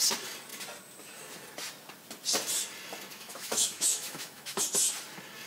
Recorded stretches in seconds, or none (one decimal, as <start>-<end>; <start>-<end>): 0.0-3.1; 4.6-5.5